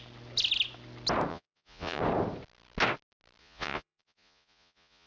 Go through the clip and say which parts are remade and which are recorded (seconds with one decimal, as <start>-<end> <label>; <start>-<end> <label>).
0.0-1.3 recorded; 1.3-2.0 remade; 2.0-3.4 recorded; 3.4-5.1 remade